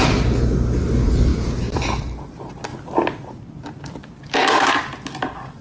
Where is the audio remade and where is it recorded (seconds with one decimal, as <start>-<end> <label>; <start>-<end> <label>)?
0.0-5.6 recorded